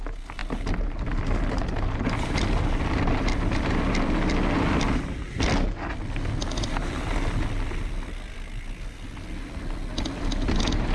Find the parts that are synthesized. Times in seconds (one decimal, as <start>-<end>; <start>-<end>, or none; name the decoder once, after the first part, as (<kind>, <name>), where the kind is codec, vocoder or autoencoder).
none